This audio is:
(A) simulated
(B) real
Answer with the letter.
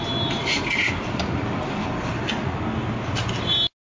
B